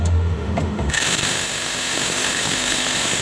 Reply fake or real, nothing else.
fake